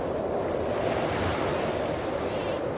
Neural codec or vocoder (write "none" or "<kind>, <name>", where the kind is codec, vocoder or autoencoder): none